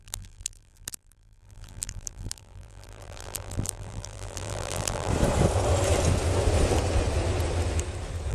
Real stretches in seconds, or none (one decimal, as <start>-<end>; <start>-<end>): 5.1-8.3